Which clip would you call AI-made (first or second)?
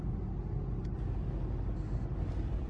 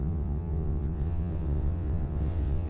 second